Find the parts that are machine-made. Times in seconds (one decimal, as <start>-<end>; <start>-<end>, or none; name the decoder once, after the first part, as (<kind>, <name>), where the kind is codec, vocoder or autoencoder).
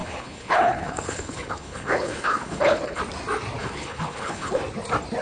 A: 0.0-3.0 (codec, HILCodec); 3.6-4.6